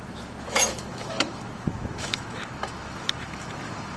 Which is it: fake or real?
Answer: fake